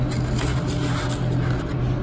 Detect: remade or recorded recorded